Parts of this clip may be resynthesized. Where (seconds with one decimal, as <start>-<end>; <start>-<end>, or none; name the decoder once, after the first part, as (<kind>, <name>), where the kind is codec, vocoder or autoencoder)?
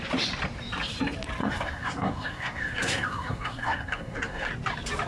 1.4-4.5 (codec, SNAC)